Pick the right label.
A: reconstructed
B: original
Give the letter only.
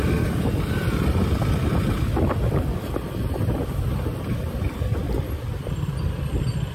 B